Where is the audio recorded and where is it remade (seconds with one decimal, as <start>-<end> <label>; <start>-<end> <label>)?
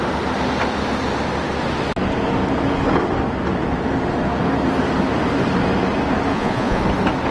0.0-6.3 recorded; 6.3-6.8 remade; 6.8-7.3 recorded